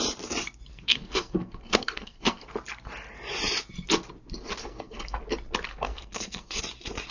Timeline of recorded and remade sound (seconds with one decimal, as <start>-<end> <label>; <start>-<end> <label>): 0.0-0.7 recorded; 0.7-2.5 remade; 2.5-4.6 recorded; 4.6-5.2 remade; 5.2-5.7 recorded; 5.7-6.6 remade; 6.6-7.1 recorded